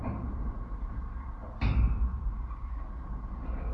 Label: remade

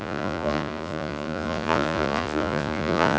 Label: remade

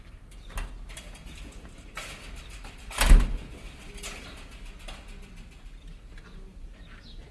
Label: recorded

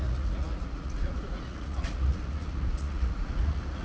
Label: remade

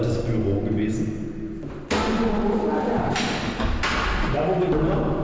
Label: recorded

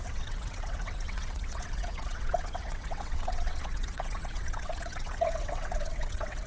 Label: remade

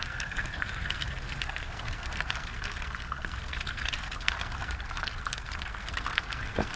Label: remade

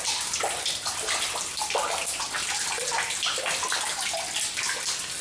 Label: recorded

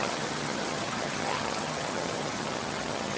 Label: remade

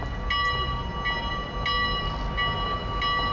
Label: recorded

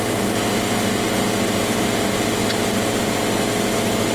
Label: recorded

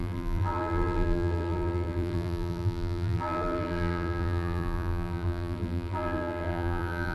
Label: remade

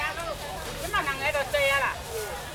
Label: recorded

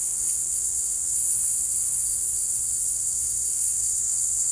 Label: remade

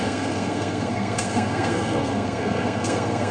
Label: remade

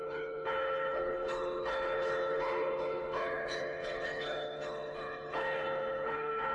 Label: remade